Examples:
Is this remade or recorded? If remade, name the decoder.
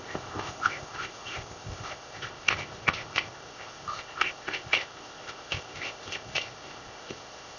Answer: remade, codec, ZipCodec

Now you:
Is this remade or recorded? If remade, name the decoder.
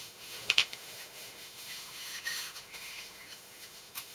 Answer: remade, autoencoder, DAC-VAE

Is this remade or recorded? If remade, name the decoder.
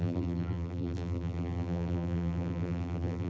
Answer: remade, vocoder, BigVGAN v2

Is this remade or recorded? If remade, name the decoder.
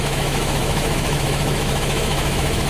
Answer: remade, autoencoder, DAC-VAE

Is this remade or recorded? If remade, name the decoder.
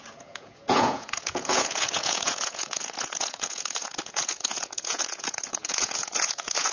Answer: remade, vocoder, Vocos